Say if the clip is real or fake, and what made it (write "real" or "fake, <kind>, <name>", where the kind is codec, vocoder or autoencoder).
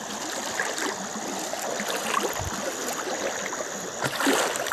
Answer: real